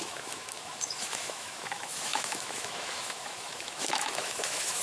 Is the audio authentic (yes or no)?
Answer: no